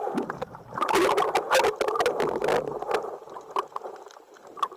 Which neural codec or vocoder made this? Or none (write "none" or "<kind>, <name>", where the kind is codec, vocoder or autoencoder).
none